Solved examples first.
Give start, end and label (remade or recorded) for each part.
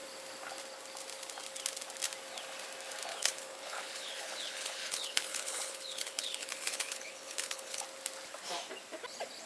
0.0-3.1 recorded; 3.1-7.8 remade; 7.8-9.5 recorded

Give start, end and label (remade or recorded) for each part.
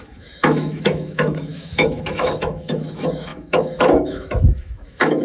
0.0-5.2 remade